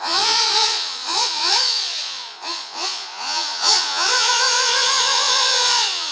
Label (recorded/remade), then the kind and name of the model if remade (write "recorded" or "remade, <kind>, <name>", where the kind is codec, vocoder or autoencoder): remade, vocoder, Vocos